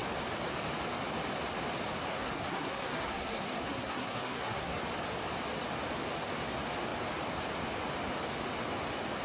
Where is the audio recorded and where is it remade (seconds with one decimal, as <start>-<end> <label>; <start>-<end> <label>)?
0.0-2.1 recorded; 2.1-4.8 remade; 4.8-9.2 recorded